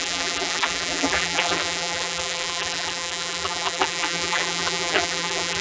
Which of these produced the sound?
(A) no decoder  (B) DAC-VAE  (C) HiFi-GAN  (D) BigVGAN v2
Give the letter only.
D